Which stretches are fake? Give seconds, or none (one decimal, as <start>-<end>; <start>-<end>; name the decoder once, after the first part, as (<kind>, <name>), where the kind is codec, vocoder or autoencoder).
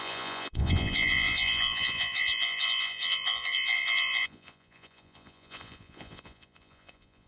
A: 0.0-7.3 (vocoder, Vocos)